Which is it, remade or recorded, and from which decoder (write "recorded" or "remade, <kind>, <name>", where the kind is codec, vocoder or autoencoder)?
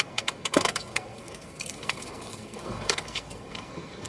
remade, codec, SNAC